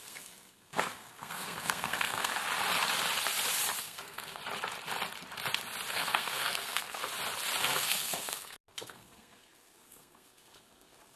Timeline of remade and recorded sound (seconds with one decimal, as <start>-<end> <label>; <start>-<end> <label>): 0.0-2.3 remade; 2.3-3.8 recorded; 3.8-4.4 remade; 4.4-5.9 recorded; 5.9-7.1 remade; 7.1-7.6 recorded; 7.6-11.2 remade

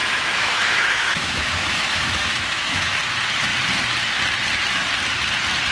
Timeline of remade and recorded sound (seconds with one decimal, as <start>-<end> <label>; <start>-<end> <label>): 0.0-3.0 remade; 3.0-5.7 recorded

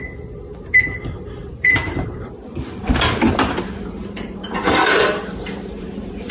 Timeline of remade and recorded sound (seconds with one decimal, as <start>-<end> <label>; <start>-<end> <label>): 0.0-1.4 recorded; 1.4-3.5 remade; 3.5-4.0 recorded; 4.0-6.3 remade

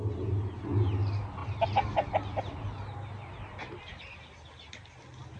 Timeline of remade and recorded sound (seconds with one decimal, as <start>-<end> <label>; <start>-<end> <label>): 0.0-5.4 recorded

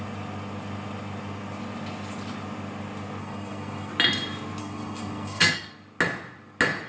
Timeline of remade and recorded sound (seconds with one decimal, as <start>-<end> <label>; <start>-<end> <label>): 0.0-3.2 recorded; 3.2-3.9 remade; 3.9-4.6 recorded; 4.6-5.7 remade; 5.7-6.9 recorded

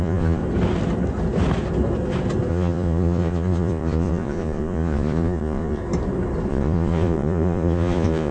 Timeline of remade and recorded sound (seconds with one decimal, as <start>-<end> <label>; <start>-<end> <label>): 0.0-0.4 remade; 0.4-2.5 recorded; 2.5-5.8 remade; 5.8-6.5 recorded; 6.5-8.3 remade

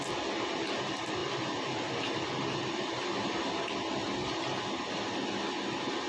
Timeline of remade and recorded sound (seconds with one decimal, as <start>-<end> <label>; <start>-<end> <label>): 0.0-6.1 recorded